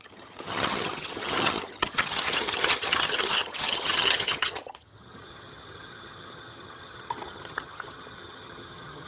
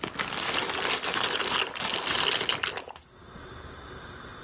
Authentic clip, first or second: second